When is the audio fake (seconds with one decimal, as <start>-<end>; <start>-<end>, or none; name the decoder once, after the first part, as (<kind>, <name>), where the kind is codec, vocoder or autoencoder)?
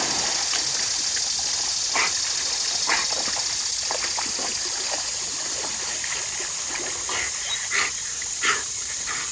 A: none